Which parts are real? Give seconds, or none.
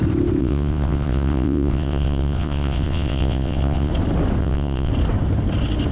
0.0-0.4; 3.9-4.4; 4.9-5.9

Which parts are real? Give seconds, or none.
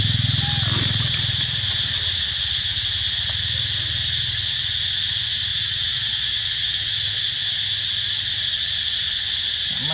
0.0-5.5; 6.9-9.9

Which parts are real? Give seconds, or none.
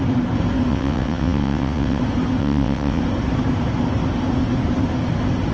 0.0-0.7; 2.0-2.4; 3.0-5.5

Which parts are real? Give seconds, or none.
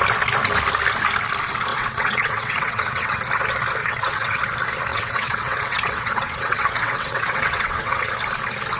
0.0-1.7; 3.2-3.8; 4.4-4.9; 8.1-8.8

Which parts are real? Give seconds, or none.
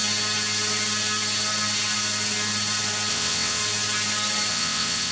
0.0-3.1; 3.6-4.5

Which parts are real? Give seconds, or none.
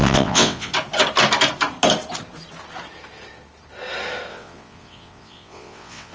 0.7-4.3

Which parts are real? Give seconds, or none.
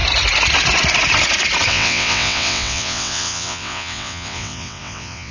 0.0-1.7